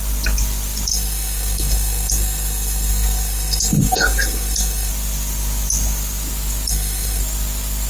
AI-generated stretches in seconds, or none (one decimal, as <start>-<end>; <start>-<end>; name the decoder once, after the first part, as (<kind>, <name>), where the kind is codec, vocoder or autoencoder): 0.9-4.9 (codec, SNAC); 6.7-7.2

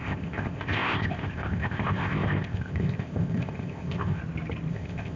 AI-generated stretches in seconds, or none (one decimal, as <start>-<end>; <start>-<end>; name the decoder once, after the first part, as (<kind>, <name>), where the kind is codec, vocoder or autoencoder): 0.0-4.2 (codec, ZipCodec); 4.7-5.2

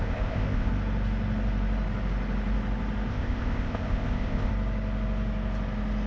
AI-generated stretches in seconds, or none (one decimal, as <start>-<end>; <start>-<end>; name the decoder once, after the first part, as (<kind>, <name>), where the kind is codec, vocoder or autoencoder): 0.0-0.7 (codec, ZipCodec); 3.1-4.5